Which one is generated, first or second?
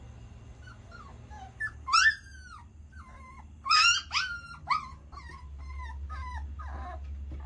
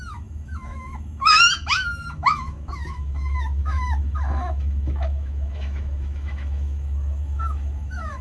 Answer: second